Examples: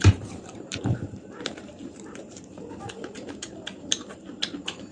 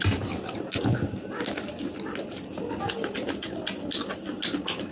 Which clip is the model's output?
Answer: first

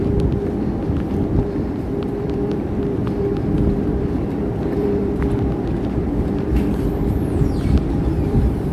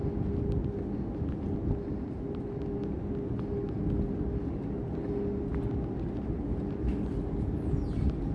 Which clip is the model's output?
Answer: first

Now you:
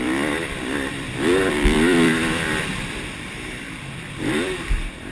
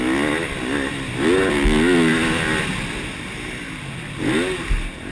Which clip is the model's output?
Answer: first